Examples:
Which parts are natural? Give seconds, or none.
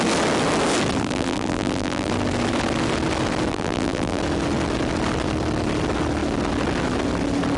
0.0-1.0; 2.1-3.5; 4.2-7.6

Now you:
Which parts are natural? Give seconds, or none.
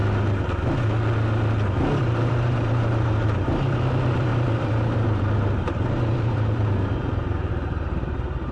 0.0-2.0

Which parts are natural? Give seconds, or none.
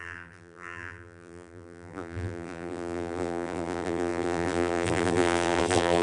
none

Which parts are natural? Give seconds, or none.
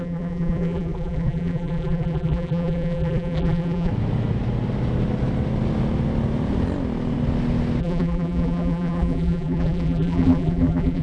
3.9-7.8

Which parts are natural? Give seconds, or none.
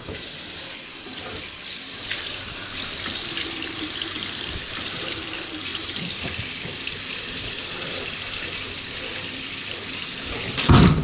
none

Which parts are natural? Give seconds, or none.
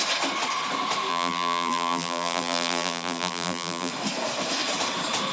0.0-1.1; 3.9-5.3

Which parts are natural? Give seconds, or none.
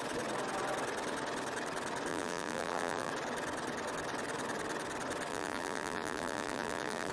0.0-2.1; 3.1-5.3